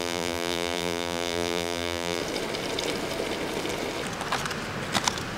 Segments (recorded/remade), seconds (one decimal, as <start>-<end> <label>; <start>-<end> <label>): 0.0-2.2 remade; 2.2-5.4 recorded